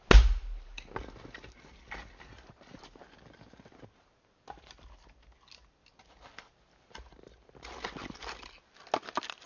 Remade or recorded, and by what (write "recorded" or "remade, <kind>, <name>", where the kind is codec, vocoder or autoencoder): recorded